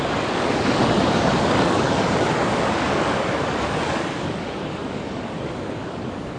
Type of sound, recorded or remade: remade